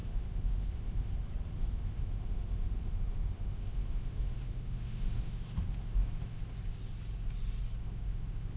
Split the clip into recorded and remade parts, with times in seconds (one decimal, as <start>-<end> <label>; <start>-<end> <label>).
0.0-1.1 remade; 1.1-1.6 recorded; 1.6-6.4 remade; 6.4-7.8 recorded; 7.8-8.6 remade